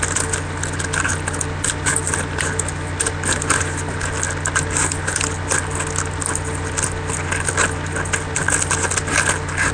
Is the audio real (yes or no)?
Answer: yes